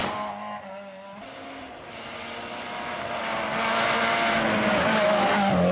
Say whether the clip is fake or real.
real